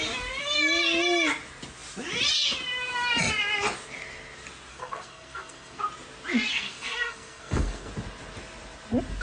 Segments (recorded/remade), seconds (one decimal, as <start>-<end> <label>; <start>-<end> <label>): 0.0-4.7 recorded; 4.7-5.8 remade; 5.8-6.5 recorded; 6.5-7.9 remade; 7.9-9.2 recorded